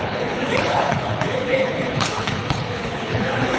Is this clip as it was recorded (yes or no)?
no